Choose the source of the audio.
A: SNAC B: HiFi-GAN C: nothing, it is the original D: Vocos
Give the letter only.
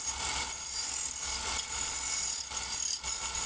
C